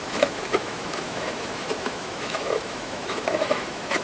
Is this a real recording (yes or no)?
no